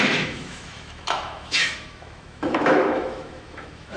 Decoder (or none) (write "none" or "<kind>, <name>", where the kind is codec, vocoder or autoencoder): autoencoder, DAC-VAE